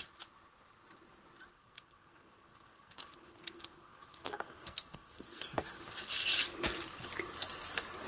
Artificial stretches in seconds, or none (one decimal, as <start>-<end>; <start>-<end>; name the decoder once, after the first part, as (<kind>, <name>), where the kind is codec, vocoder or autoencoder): 1.5-5.8 (codec, SNAC)